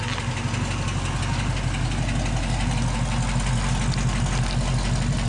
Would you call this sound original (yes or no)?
yes